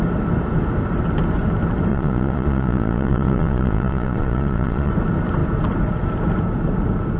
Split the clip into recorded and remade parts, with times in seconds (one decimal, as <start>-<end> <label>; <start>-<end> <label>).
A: 0.0-1.9 recorded; 1.9-4.9 remade; 4.9-7.2 recorded